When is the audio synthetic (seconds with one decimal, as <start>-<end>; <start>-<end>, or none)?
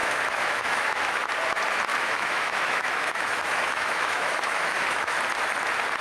0.0-1.3; 1.9-5.2